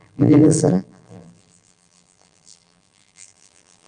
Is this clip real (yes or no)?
no